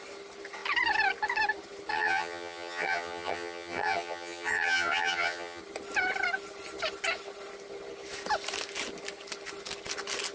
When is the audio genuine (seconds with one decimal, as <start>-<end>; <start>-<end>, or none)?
0.0-1.9; 5.6-10.3